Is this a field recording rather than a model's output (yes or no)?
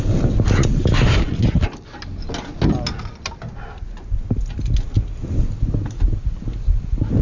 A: yes